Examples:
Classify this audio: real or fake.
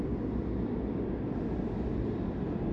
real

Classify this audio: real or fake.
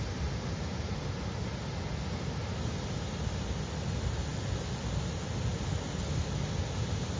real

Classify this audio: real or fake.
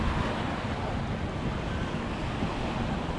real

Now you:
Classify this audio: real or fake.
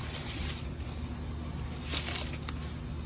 real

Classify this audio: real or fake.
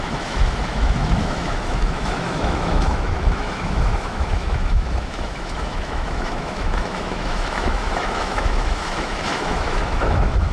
fake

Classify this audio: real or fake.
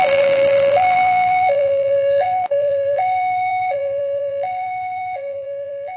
fake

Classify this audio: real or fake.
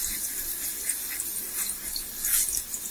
real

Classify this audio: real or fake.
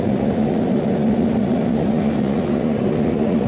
fake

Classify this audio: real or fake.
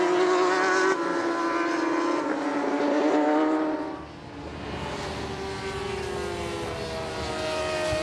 real